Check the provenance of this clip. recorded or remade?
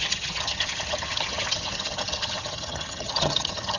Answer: remade